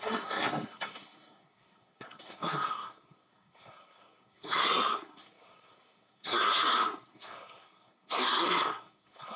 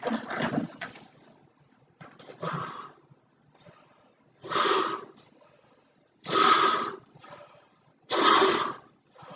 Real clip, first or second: second